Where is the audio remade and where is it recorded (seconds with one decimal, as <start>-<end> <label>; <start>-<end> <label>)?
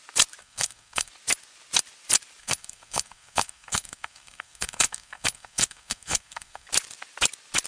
0.0-0.4 recorded; 0.4-1.1 remade; 1.1-2.4 recorded; 2.4-6.7 remade; 6.7-7.7 recorded